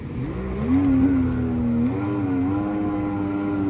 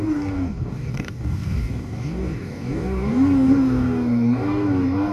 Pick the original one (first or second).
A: first